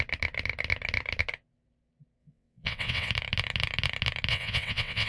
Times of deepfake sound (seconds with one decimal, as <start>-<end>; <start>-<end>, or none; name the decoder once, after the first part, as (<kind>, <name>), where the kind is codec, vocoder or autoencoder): 2.2-3.1 (vocoder, WaveNeXt); 4.3-5.1